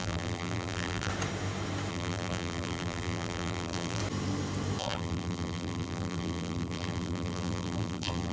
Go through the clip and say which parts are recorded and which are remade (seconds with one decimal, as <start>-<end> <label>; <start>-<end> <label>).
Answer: 0.0-1.1 remade; 1.1-1.9 recorded; 1.9-4.0 remade; 4.0-4.8 recorded; 4.8-8.3 remade